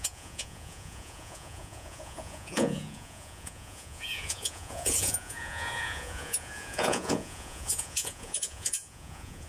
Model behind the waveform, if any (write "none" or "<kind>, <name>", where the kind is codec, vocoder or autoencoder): vocoder, Vocos